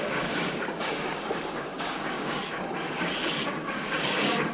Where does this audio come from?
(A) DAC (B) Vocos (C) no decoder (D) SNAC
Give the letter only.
A